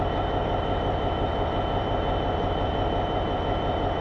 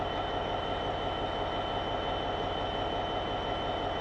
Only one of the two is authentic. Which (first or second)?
second